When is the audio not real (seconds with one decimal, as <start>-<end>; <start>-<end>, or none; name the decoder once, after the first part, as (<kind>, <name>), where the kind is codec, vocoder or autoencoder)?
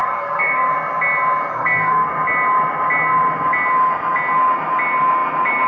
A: 0.0-0.7 (codec, SNAC); 1.5-2.1